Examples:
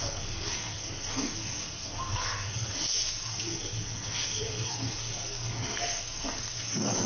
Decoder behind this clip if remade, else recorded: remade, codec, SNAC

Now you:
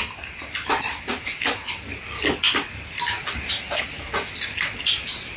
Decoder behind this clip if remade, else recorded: recorded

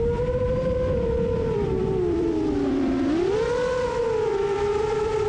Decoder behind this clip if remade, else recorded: remade, vocoder, BigVGAN v2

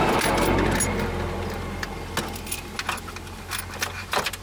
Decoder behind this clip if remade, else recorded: recorded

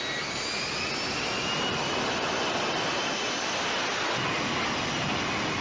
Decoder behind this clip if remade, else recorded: recorded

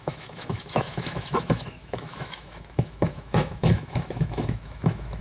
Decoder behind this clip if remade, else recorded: remade, autoencoder, DAC-VAE